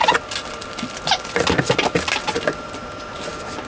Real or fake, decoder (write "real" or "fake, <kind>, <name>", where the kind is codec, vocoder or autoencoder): real